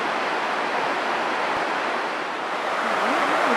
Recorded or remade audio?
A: recorded